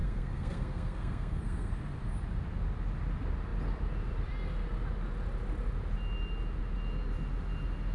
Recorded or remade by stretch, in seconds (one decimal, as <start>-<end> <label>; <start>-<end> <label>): 0.0-1.7 remade; 1.7-7.9 recorded